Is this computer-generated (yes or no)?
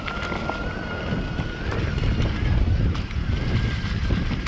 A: no